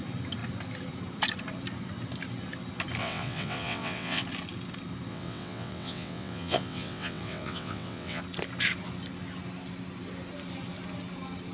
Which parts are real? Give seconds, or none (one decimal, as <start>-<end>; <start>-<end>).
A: 0.0-3.0; 4.2-5.1; 8.2-11.5